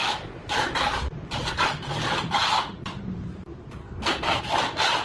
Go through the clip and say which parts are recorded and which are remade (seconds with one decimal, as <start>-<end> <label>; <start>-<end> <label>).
0.0-3.8 recorded; 3.8-4.4 remade; 4.4-5.0 recorded